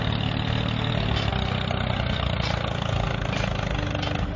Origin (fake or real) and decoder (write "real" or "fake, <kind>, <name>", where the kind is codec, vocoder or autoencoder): real